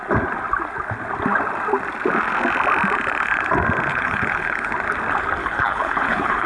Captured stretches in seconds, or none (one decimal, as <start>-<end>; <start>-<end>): 0.0-3.9; 4.7-5.4